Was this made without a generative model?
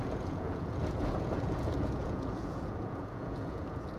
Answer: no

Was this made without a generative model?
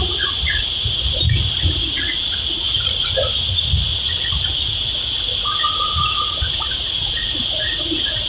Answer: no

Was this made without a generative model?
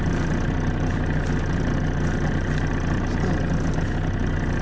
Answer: yes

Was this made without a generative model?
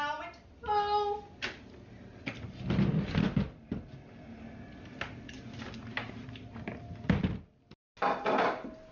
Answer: yes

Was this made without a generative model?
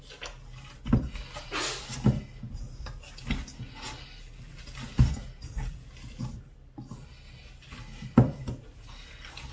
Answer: yes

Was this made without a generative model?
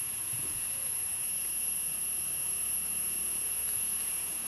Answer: no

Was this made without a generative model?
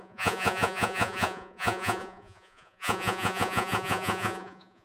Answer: no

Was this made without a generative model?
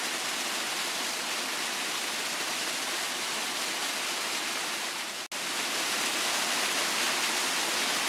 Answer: yes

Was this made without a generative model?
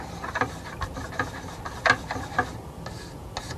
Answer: yes